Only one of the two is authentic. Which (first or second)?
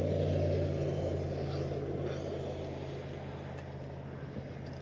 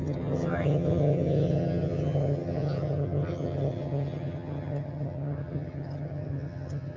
first